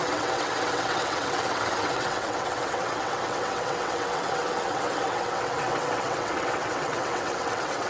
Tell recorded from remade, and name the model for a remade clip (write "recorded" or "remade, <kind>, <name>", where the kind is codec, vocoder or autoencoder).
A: remade, vocoder, WaveNeXt